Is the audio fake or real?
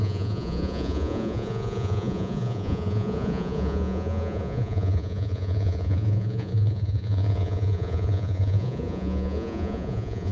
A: fake